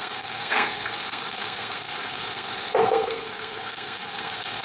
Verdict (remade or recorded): remade